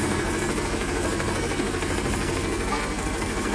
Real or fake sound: fake